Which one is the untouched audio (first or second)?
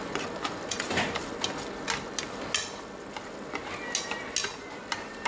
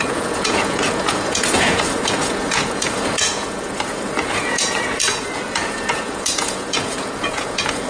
first